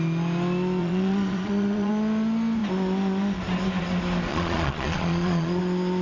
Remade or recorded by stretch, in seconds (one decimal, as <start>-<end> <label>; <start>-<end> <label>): 0.0-0.8 recorded; 0.8-1.9 remade; 1.9-4.3 recorded; 4.3-5.6 remade; 5.6-6.0 recorded

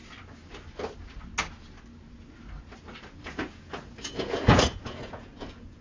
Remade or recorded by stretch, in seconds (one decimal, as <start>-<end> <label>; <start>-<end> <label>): 0.0-3.2 recorded; 3.2-5.8 remade

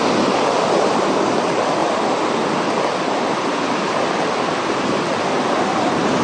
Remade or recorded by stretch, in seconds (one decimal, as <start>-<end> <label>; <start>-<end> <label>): 0.0-6.2 recorded

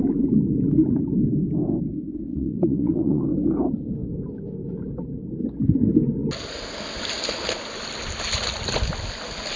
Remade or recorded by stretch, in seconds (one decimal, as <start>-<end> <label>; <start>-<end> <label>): 0.0-2.3 recorded; 2.3-3.2 remade; 3.2-9.6 recorded